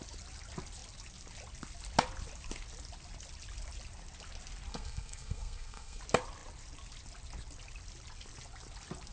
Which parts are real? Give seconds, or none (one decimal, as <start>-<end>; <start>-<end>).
0.0-4.7; 6.0-9.1